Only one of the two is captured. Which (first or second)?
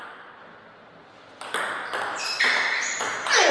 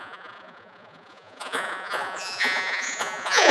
first